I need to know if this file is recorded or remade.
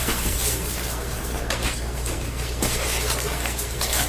remade